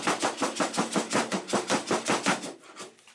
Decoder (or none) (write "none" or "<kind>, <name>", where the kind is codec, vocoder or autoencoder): none